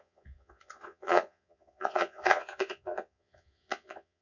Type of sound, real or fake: fake